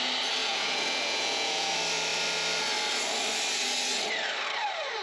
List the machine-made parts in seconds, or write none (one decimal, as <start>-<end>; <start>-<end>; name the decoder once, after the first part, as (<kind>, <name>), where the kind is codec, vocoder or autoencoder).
0.4-1.7 (vocoder, Vocos)